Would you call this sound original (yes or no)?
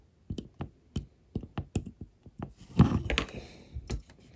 yes